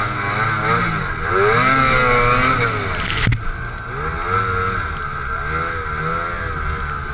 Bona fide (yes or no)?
yes